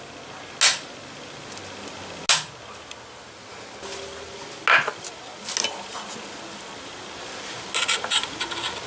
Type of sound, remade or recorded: recorded